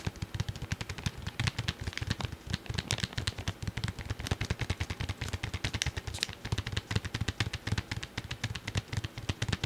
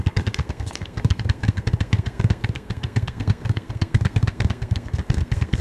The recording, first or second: first